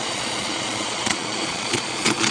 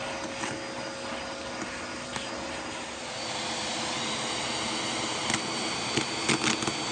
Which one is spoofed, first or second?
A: first